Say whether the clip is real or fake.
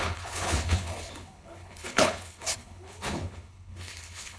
fake